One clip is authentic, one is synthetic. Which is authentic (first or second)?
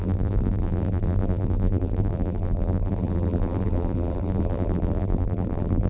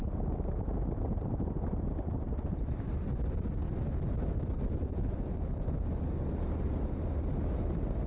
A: second